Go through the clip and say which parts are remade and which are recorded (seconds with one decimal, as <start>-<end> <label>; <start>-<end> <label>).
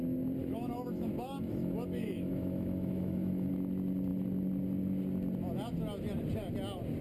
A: 0.0-0.4 recorded; 0.4-3.5 remade; 3.5-7.0 recorded